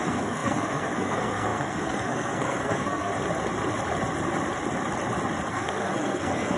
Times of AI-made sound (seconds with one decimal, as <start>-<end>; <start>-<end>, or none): 0.0-3.1; 5.5-6.6